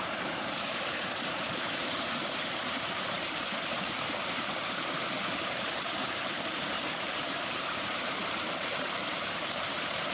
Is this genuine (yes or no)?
no